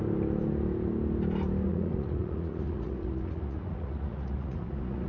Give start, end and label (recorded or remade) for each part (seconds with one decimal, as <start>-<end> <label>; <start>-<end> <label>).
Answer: 0.0-1.7 recorded; 1.7-5.1 remade